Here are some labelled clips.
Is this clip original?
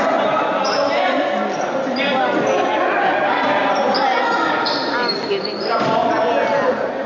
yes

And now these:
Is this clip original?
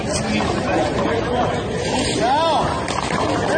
yes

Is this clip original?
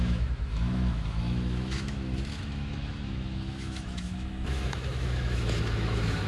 no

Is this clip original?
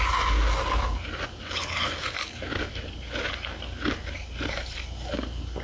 yes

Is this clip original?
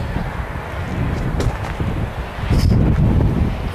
yes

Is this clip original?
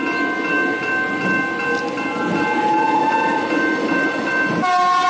yes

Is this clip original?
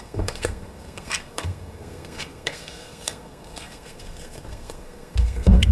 no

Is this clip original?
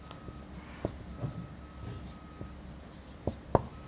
yes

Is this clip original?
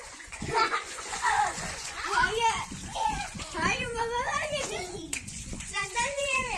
no